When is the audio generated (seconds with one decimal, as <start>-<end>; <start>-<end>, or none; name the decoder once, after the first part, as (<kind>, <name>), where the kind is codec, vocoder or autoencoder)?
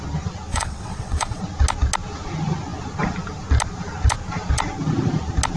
0.5-1.4 (vocoder, WaveNeXt)